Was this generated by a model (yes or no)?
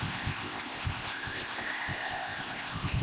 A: yes